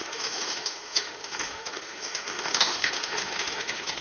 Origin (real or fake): fake